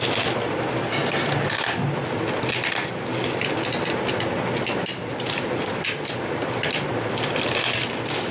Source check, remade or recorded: recorded